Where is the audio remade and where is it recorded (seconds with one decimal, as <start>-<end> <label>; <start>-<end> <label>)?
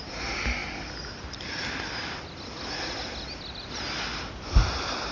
0.0-5.1 recorded